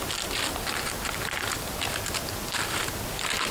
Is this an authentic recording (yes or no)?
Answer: yes